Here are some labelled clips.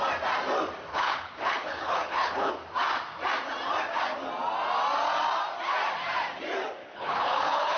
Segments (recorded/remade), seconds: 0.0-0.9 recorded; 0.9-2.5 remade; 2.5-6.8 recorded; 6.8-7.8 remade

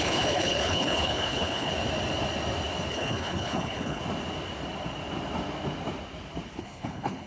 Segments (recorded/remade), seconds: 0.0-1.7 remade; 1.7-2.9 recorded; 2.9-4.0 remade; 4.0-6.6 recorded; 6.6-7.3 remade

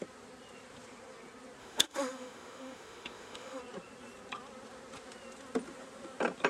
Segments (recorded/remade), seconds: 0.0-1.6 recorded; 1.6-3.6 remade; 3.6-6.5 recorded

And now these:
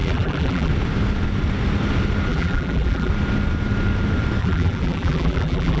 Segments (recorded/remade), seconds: 0.0-0.7 remade; 0.7-2.3 recorded; 2.3-3.1 remade; 3.1-4.4 recorded; 4.4-5.8 remade

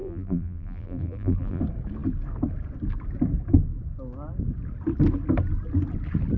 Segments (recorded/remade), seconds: 0.0-1.6 remade; 1.6-6.4 recorded

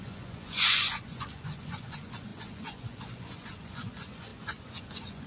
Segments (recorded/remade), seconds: 0.0-5.3 remade